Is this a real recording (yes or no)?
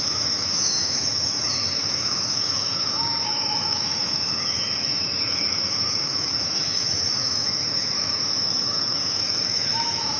no